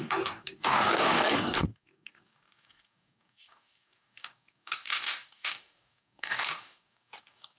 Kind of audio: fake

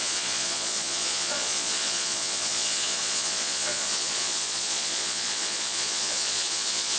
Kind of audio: fake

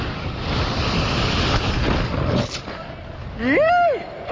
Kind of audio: real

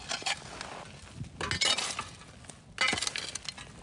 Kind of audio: real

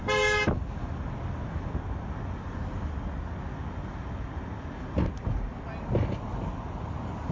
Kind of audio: real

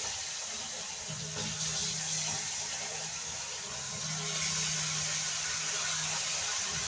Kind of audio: real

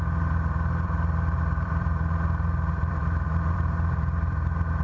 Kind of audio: fake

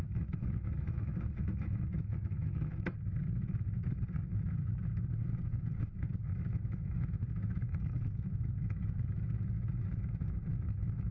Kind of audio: fake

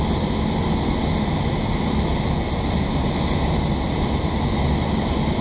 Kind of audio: real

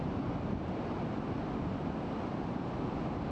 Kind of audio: real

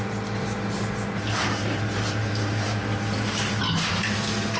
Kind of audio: real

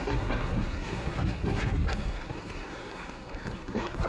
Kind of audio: fake